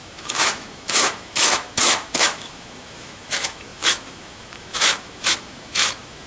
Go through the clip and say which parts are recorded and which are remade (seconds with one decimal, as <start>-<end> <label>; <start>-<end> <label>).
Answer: 0.0-6.3 remade